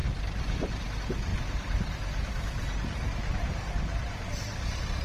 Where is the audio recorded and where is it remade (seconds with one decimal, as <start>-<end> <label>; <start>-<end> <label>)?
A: 0.0-0.8 remade; 0.8-1.3 recorded; 1.3-4.3 remade; 4.3-5.0 recorded